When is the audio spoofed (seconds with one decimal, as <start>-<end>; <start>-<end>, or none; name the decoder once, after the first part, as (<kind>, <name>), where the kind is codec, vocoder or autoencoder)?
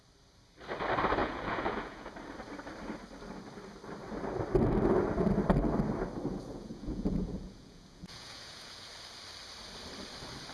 1.2-2.1 (vocoder, Vocos); 6.5-8.9